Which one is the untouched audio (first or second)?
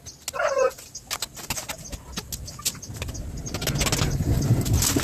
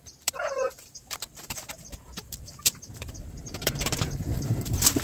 first